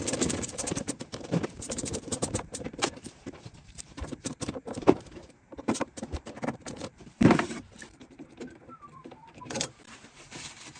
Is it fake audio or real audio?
fake